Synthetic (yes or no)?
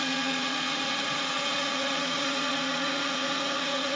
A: yes